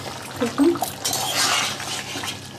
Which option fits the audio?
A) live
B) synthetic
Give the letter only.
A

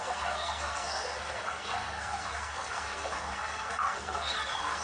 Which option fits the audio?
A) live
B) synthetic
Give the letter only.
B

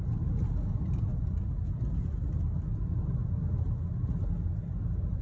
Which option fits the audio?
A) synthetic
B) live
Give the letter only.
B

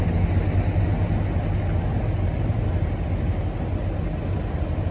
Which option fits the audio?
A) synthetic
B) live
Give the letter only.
B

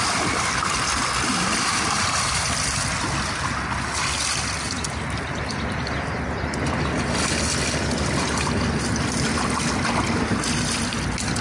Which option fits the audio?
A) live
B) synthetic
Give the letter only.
A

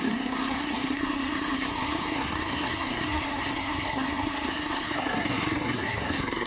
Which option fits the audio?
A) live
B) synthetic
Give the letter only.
B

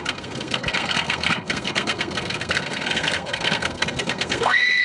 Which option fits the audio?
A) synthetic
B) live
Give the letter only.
A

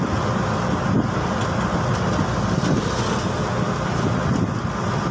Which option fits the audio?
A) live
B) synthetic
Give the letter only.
A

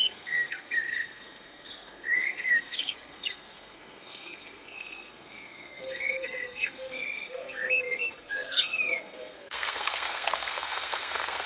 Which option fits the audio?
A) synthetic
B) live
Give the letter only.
A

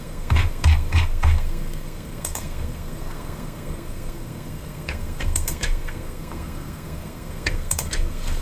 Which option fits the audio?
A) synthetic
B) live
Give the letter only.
A